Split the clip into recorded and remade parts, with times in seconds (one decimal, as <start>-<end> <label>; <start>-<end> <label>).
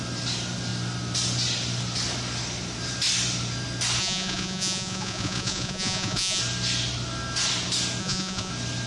0.0-4.0 recorded; 4.0-6.4 remade; 6.4-8.0 recorded; 8.0-8.5 remade; 8.5-8.9 recorded